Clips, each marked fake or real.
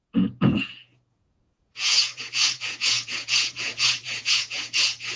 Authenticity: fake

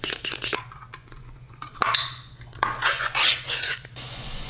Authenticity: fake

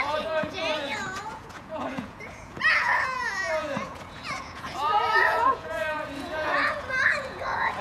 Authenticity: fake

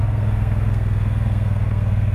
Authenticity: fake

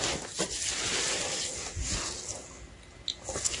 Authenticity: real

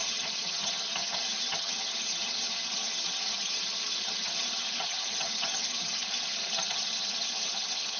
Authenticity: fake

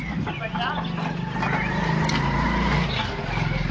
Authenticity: real